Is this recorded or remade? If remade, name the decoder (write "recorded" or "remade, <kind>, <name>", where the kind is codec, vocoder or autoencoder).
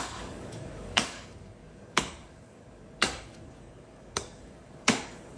remade, codec, DAC